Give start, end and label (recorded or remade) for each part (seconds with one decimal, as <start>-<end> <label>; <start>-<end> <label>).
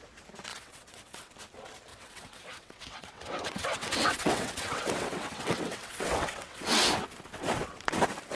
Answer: 0.0-0.5 recorded; 0.5-1.3 remade; 1.3-1.9 recorded; 1.9-6.9 remade; 6.9-8.3 recorded